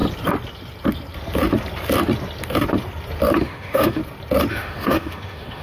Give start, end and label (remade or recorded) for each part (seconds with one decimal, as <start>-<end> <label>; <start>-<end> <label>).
0.0-3.4 recorded; 3.4-4.0 remade; 4.0-4.5 recorded; 4.5-5.6 remade